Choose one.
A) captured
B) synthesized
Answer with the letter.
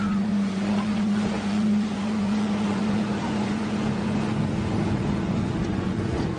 B